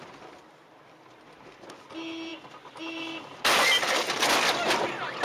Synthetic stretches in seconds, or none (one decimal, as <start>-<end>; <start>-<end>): none